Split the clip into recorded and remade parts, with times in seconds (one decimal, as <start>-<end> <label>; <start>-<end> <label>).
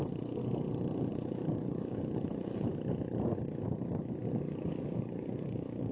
0.0-0.4 remade; 0.4-1.1 recorded; 1.1-2.7 remade; 2.7-4.3 recorded; 4.3-5.9 remade